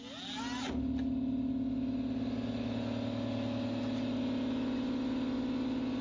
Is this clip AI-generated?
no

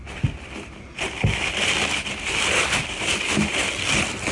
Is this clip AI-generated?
yes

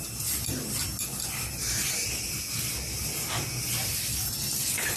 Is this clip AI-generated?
no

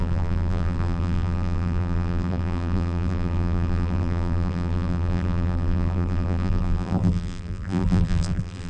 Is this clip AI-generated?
yes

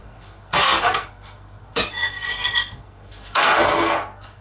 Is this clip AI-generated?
yes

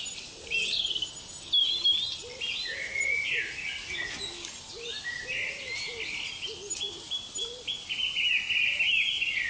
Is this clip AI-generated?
no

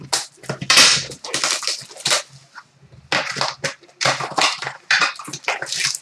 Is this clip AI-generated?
no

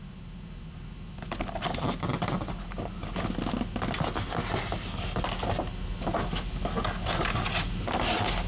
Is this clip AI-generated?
no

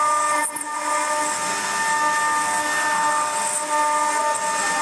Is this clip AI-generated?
no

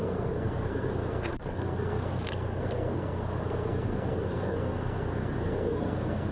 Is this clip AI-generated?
yes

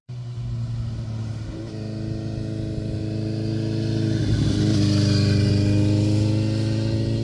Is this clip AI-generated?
no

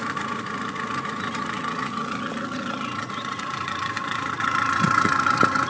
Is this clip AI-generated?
yes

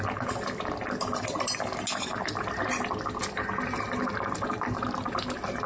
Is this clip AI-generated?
no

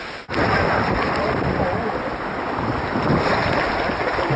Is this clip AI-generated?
no